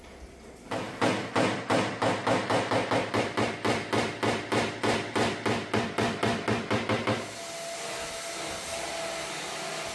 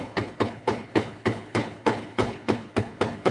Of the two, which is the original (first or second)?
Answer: first